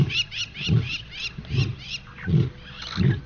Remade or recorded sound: recorded